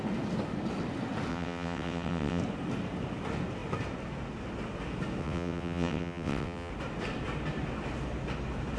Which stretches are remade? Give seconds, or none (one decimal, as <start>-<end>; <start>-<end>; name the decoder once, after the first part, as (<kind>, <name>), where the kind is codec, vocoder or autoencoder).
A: 1.3-2.4 (vocoder, WaveNeXt); 5.2-6.7